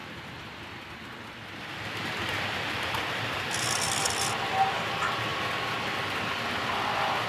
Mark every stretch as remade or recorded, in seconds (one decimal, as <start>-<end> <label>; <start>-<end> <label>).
0.0-4.0 remade; 4.0-7.3 recorded